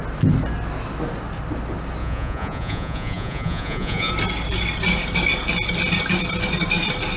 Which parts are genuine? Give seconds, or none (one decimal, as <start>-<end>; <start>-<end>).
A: 0.0-2.0; 4.1-7.2